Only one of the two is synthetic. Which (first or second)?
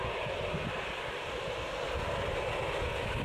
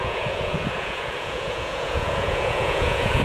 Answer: second